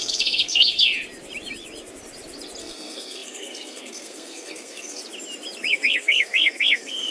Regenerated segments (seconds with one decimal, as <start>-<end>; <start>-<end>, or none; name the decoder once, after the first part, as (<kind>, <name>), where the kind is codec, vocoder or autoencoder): 0.0-0.9 (codec, SNAC); 2.6-5.0; 5.7-7.1